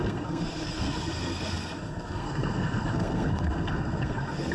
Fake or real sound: fake